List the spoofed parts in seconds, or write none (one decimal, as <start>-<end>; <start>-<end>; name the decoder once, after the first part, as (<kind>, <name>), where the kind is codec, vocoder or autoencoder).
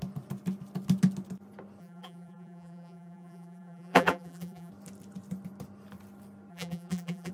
1.8-4.7 (vocoder, BigVGAN v2); 6.5-7.3